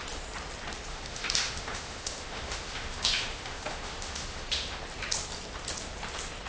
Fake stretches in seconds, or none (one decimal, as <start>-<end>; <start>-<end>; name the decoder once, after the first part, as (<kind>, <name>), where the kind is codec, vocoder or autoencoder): 0.9-4.8 (autoencoder, DAC-VAE)